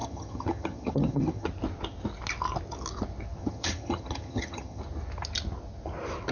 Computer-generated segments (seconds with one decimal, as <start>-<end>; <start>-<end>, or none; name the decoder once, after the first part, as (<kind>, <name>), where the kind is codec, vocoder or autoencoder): 0.0-1.5 (vocoder, HiFi-GAN); 3.4-4.8